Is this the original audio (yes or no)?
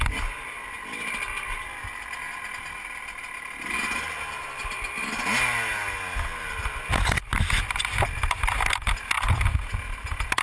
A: yes